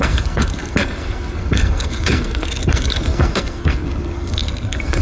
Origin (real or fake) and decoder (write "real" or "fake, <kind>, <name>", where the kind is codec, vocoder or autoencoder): fake, codec, SNAC